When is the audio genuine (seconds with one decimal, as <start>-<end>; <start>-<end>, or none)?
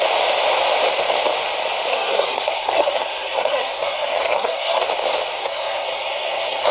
0.0-1.9; 4.8-5.4